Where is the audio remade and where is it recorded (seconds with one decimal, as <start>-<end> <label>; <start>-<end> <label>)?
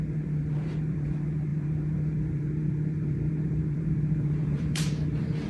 0.0-5.5 remade